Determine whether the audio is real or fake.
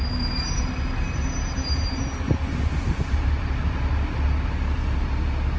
real